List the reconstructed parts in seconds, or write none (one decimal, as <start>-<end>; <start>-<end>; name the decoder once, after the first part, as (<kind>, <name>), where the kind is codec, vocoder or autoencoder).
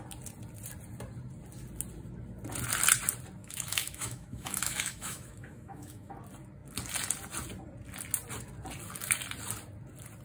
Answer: 3.4-6.1 (autoencoder, DAC-VAE)